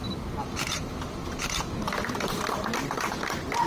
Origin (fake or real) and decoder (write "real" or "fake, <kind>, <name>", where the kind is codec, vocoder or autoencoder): real